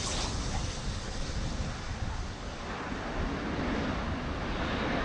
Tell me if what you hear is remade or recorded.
recorded